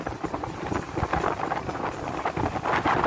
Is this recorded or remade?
recorded